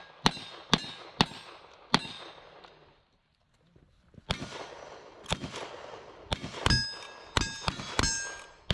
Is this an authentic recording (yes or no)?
yes